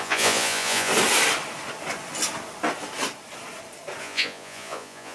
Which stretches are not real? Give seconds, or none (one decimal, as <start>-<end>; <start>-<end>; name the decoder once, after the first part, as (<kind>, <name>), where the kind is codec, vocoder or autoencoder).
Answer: 0.0-0.9 (vocoder, Vocos); 4.0-5.1